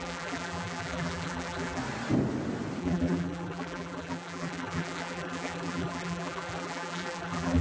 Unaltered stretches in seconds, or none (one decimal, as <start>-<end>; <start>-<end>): 1.8-2.8